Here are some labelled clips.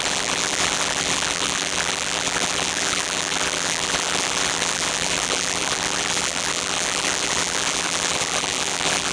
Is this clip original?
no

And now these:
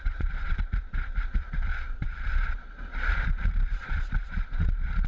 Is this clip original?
no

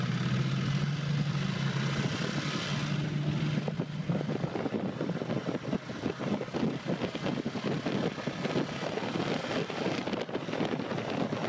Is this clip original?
yes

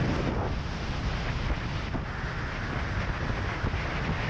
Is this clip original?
yes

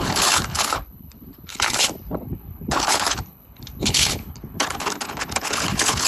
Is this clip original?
no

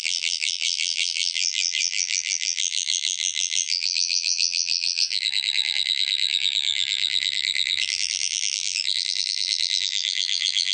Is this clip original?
no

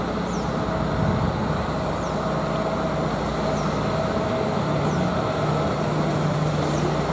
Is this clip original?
yes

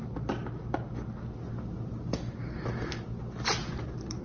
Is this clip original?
yes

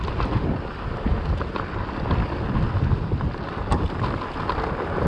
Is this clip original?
yes